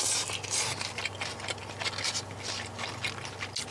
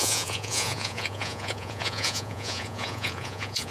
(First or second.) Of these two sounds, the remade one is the second